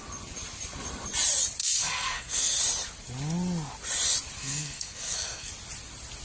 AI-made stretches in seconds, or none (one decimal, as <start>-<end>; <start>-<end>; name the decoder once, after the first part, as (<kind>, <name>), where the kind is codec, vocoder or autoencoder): 1.6-2.6 (codec, SNAC); 4.4-5.5